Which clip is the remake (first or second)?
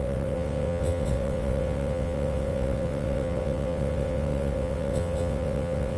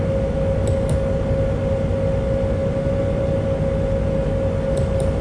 first